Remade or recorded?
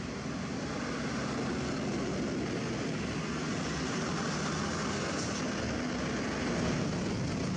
recorded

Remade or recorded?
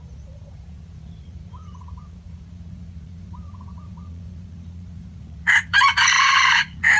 remade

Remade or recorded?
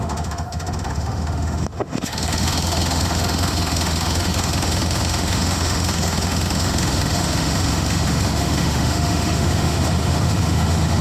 remade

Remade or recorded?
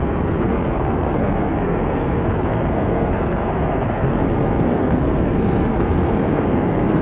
remade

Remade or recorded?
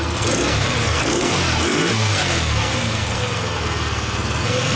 remade